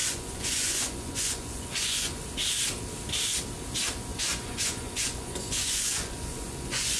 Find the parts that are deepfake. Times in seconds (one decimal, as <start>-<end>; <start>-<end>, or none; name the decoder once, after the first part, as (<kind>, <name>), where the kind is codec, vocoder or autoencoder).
0.0-2.2 (vocoder, Vocos); 4.1-7.0